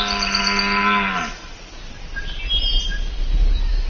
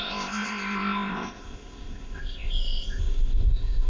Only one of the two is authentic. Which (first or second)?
first